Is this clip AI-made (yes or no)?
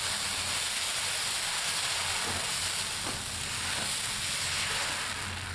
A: no